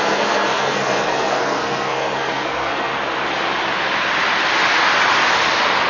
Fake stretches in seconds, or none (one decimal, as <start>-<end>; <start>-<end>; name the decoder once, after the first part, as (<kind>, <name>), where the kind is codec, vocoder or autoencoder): 0.0-2.9 (codec, SNAC)